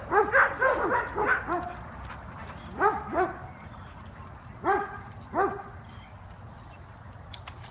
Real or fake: real